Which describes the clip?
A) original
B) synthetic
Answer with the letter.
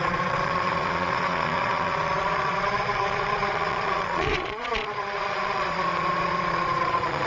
B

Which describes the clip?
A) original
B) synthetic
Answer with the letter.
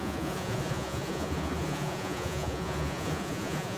B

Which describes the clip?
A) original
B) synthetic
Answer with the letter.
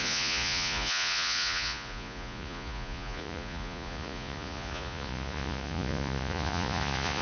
B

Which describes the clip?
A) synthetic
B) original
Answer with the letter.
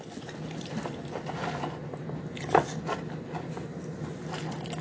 B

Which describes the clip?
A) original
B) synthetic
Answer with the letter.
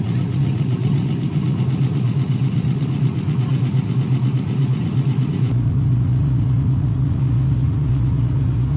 B